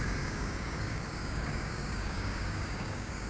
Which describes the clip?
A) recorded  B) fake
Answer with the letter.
B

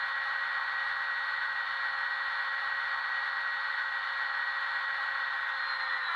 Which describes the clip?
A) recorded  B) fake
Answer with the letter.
A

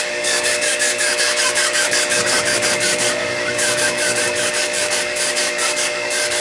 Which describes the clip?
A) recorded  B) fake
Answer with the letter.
B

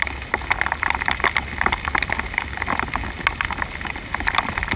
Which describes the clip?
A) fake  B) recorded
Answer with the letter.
B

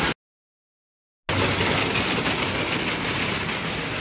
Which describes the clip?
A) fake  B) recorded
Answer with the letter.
B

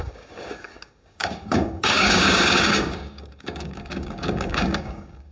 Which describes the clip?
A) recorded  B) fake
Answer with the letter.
B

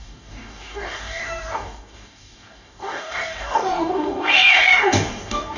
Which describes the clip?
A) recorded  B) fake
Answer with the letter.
B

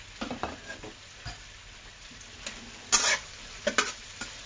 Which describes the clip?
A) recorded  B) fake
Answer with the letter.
A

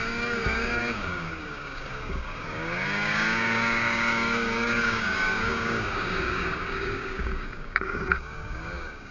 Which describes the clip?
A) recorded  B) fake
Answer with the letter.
B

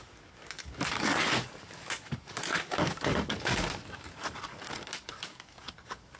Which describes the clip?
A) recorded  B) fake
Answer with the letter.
B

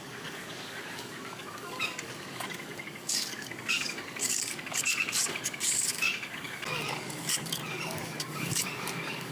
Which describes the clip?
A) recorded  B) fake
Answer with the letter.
B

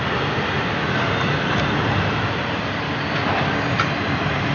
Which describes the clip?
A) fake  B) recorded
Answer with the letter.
B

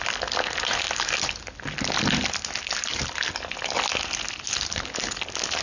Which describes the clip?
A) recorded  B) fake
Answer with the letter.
A